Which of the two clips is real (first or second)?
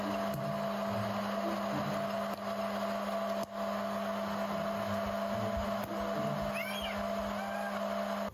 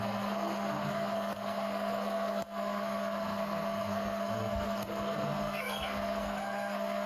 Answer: first